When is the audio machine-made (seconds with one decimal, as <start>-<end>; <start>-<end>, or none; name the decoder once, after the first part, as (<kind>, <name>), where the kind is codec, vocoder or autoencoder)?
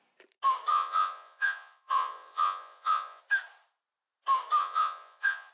0.7-3.2 (vocoder, Vocos); 4.6-5.5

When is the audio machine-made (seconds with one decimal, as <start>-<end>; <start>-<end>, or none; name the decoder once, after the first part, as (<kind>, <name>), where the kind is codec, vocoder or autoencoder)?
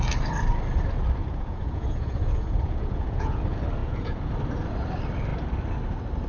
1.2-3.4 (vocoder, Vocos); 3.8-4.3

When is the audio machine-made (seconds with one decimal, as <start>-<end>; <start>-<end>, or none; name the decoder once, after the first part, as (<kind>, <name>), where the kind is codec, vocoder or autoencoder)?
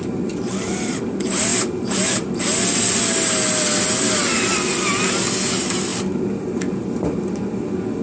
none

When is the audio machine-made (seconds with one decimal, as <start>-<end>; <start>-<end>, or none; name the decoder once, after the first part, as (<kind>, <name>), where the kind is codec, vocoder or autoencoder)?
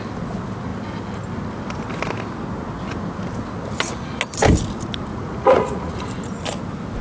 5.1-6.1 (vocoder, Vocos)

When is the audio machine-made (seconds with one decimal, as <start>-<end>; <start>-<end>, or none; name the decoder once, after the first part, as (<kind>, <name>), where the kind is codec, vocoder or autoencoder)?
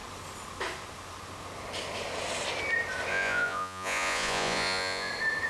3.1-5.1 (vocoder, Vocos)